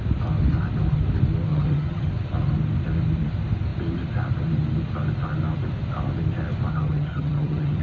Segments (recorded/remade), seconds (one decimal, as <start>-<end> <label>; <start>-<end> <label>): 0.0-1.5 recorded; 1.5-2.1 remade; 2.1-6.7 recorded; 6.7-7.8 remade